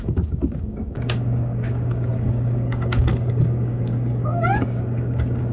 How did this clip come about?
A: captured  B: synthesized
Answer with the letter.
B